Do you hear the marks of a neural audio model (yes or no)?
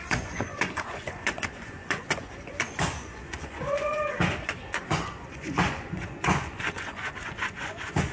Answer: yes